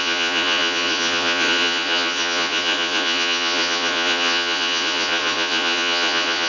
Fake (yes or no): yes